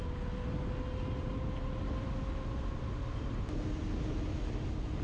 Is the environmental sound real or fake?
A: real